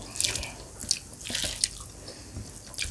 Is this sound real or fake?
real